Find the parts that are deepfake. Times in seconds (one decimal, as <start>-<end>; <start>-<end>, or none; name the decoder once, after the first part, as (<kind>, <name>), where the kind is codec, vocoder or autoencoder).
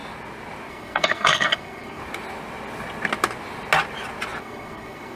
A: 0.7-2.0 (codec, SNAC); 4.4-5.2